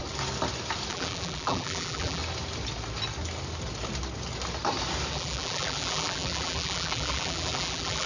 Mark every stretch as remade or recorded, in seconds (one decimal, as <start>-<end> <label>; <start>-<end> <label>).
0.0-0.9 recorded; 0.9-2.2 remade; 2.2-5.1 recorded; 5.1-8.1 remade